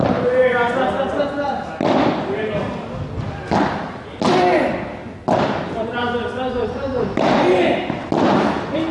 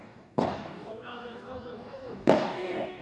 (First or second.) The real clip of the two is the first